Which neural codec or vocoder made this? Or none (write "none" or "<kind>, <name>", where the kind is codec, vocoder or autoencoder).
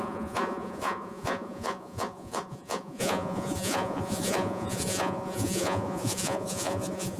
vocoder, Vocos